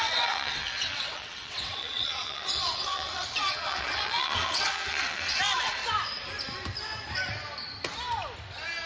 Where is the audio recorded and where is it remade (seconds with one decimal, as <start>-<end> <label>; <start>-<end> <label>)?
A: 0.0-5.8 remade; 5.8-8.9 recorded